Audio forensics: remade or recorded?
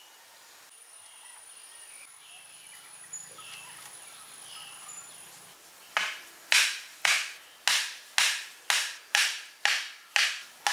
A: recorded